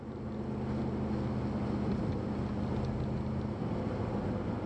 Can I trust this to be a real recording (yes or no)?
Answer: yes